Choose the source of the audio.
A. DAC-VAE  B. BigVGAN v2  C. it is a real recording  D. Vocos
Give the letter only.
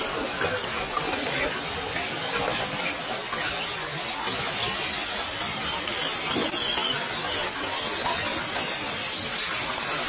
C